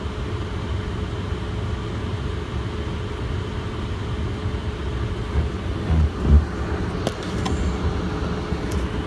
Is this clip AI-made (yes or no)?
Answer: no